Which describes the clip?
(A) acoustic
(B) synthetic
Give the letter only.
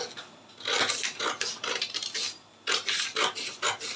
A